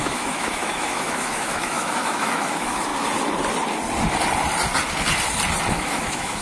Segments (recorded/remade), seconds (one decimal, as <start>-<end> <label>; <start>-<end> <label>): 0.0-2.9 remade; 2.9-5.7 recorded; 5.7-6.4 remade